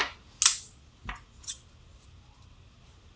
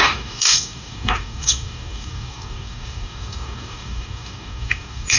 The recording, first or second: first